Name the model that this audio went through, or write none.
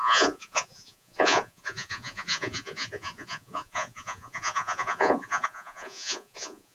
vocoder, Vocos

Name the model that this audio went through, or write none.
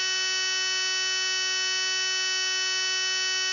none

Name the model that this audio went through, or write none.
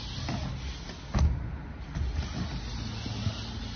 none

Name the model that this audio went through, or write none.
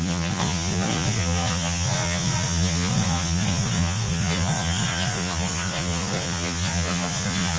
vocoder, Vocos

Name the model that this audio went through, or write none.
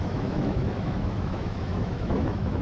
autoencoder, DAC-VAE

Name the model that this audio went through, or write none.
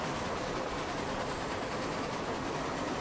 none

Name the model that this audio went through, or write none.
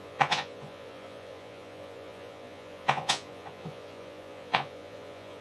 vocoder, Vocos